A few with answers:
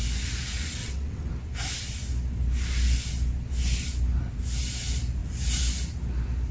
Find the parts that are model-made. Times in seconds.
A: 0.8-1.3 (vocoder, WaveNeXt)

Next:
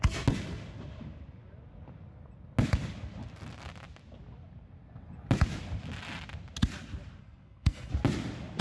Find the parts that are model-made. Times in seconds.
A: 7.2-7.9 (codec, SNAC)

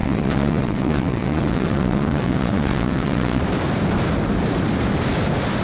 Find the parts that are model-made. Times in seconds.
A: 0.0-3.4 (vocoder, WaveNeXt)

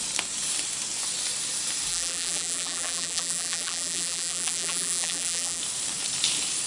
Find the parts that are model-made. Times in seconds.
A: 1.9-5.6 (vocoder, BigVGAN v2)

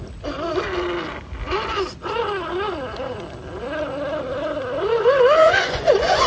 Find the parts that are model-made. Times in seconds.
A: 5.4-6.3 (vocoder, Vocos)

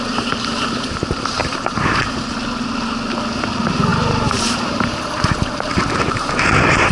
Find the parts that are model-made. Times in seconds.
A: 1.4-2.2 (vocoder, BigVGAN v2); 3.9-6.3